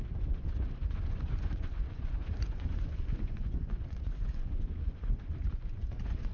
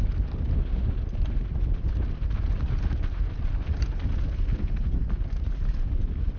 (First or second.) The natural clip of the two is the second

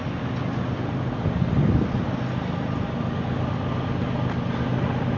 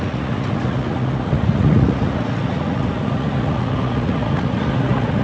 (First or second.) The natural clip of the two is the first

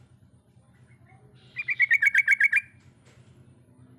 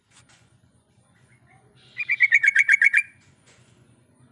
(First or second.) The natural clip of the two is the first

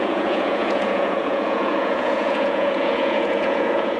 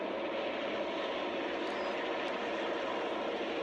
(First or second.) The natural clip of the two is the second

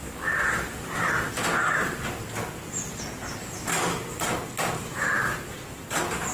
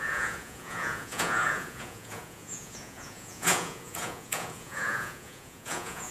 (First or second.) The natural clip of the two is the first